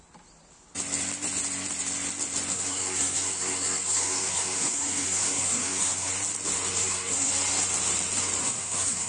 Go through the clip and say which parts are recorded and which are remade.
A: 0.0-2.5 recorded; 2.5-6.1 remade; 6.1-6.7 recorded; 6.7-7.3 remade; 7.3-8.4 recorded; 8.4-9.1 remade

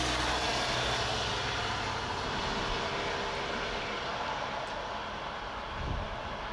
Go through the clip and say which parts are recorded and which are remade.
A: 0.0-6.5 recorded

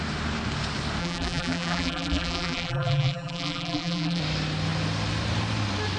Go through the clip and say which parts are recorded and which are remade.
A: 0.0-1.0 recorded; 1.0-4.2 remade; 4.2-6.0 recorded

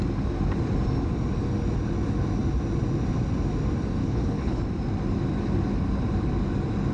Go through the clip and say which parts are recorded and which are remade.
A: 0.0-4.0 recorded; 4.0-4.6 remade; 4.6-6.9 recorded

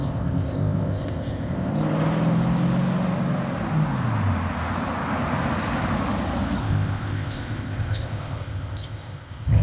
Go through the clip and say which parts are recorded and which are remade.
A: 0.0-1.7 remade; 1.7-6.6 recorded; 6.6-9.6 remade

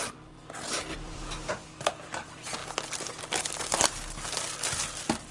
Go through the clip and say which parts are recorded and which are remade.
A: 0.0-0.9 recorded; 0.9-1.5 remade; 1.5-5.3 recorded

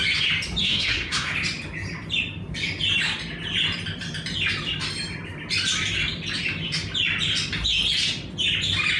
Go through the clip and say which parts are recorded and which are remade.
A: 0.0-0.6 recorded; 0.6-1.3 remade; 1.3-9.0 recorded

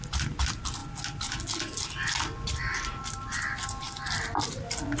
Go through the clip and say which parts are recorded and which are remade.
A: 0.0-5.0 recorded